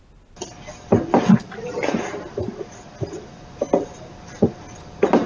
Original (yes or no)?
yes